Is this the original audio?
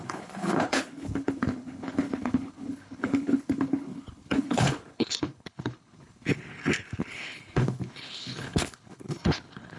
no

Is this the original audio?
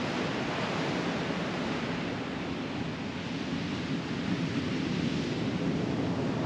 yes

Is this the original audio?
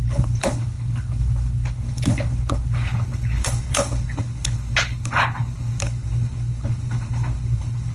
no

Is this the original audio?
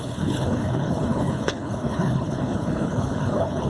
no